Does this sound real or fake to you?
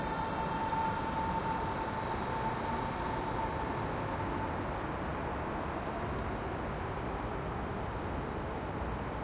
real